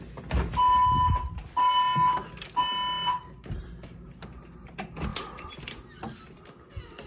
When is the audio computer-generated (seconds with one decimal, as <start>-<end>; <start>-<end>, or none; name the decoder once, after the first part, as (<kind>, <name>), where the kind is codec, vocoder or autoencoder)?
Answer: none

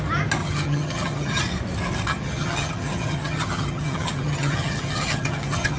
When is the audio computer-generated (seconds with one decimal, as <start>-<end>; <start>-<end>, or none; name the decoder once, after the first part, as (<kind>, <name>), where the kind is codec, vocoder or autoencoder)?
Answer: 0.4-1.4 (vocoder, HiFi-GAN); 2.1-5.8

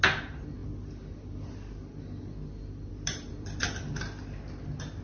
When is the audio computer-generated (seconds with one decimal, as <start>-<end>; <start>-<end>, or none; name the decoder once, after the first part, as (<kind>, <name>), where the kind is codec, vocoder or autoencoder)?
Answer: 2.9-3.6 (vocoder, BigVGAN v2)

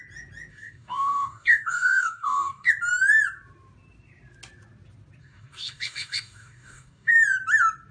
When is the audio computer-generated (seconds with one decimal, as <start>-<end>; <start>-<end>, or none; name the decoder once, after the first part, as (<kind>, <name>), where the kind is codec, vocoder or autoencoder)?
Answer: 0.5-2.7 (codec, DAC); 5.2-7.1